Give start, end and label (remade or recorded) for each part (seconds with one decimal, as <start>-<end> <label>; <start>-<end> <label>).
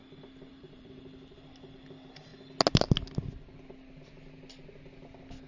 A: 0.0-0.5 recorded; 0.5-1.0 remade; 1.0-5.5 recorded